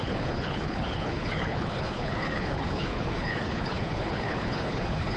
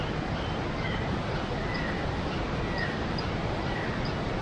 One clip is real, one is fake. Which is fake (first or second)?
first